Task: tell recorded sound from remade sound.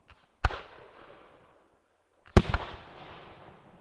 recorded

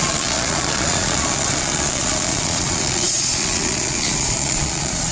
remade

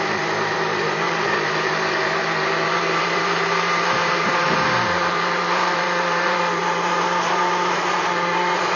remade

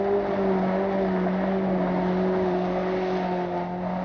recorded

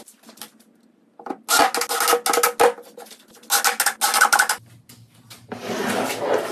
recorded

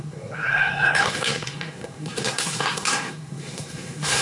remade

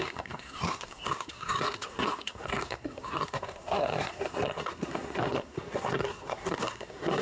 remade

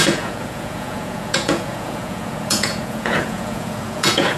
remade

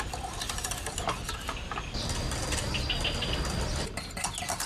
recorded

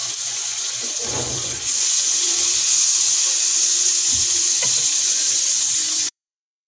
remade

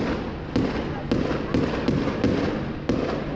recorded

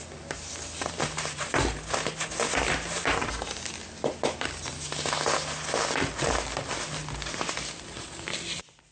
recorded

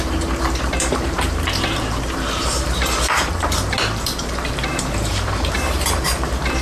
remade